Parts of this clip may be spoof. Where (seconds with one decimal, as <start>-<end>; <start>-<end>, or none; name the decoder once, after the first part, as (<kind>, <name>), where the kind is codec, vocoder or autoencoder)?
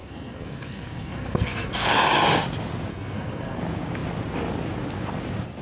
0.0-1.9 (codec, SNAC); 2.9-3.6